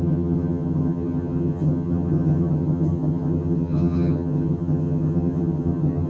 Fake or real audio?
fake